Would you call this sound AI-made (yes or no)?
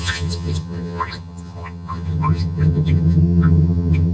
yes